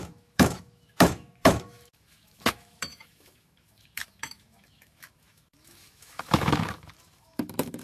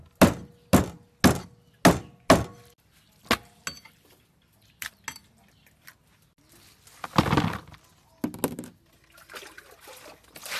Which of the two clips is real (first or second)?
second